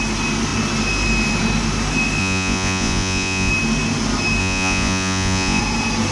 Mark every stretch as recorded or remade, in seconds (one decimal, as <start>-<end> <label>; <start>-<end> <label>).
0.0-2.2 recorded; 2.2-3.5 remade; 3.5-4.4 recorded; 4.4-5.6 remade; 5.6-6.1 recorded

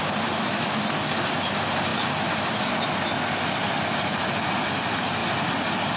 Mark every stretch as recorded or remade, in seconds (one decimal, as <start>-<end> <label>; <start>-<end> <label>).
0.0-6.0 recorded

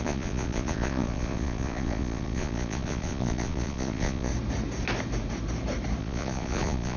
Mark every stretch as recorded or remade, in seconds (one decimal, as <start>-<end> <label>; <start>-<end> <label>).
0.0-4.3 remade; 4.3-6.0 recorded; 6.0-7.0 remade

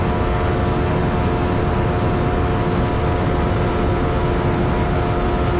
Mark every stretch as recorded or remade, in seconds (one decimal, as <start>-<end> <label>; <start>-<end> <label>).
0.0-5.6 recorded

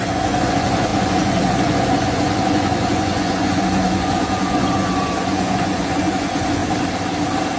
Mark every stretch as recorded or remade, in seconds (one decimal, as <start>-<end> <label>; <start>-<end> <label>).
0.0-6.6 remade; 6.6-7.6 recorded

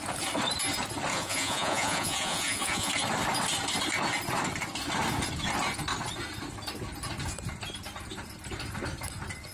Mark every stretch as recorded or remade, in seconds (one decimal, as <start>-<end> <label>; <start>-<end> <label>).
0.0-1.1 recorded; 1.1-2.9 remade; 2.9-9.5 recorded

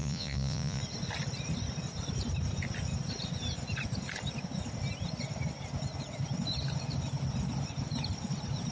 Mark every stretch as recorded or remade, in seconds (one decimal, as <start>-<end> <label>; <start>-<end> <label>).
0.0-0.8 remade; 0.8-8.7 recorded

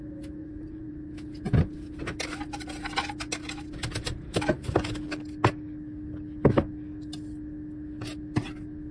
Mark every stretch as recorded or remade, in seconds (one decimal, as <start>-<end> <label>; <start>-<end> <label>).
0.0-0.4 recorded; 0.4-0.9 remade; 0.9-8.9 recorded